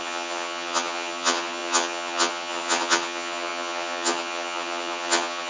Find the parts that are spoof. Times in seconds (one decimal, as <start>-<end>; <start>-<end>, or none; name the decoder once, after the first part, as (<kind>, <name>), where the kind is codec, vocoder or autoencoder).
0.0-5.5 (vocoder, HiFi-GAN)